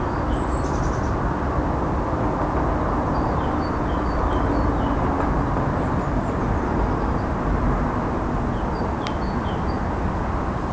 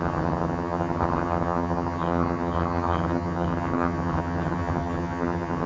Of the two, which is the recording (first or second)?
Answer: first